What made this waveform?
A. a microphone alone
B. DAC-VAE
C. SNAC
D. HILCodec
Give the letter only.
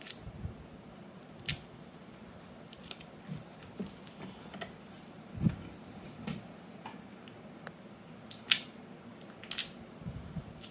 A